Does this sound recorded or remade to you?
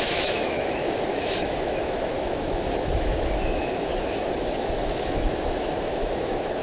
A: remade